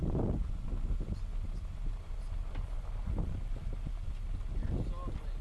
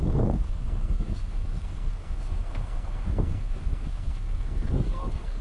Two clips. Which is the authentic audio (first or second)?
first